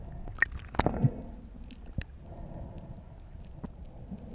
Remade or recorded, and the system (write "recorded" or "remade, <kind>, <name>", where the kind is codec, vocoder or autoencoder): recorded